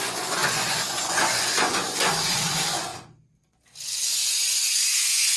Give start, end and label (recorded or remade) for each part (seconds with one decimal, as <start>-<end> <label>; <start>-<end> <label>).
0.0-2.9 remade; 2.9-4.1 recorded; 4.1-5.4 remade